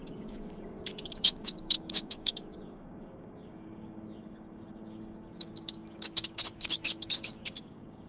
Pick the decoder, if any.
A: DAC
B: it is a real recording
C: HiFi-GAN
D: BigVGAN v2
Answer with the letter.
A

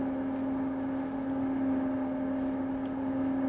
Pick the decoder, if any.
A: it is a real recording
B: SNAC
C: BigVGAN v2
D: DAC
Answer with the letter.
A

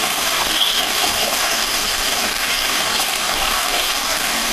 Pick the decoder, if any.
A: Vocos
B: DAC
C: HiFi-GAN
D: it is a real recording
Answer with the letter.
B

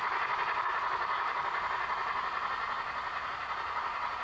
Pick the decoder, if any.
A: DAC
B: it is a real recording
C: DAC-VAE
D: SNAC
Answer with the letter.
B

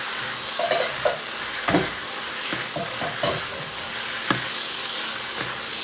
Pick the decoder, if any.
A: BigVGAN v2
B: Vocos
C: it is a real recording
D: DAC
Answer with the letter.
D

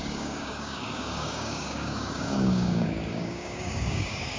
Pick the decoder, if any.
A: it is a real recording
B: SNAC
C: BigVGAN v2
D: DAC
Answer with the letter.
D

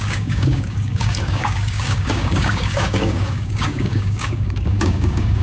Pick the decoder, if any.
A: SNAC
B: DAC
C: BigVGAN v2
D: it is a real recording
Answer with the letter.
B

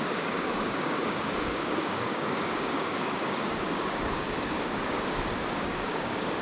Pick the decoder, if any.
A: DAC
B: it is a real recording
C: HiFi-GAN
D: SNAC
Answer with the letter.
A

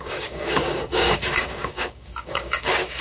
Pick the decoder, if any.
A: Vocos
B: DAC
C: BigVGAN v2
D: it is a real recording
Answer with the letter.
B